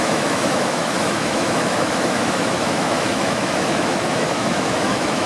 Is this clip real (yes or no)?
no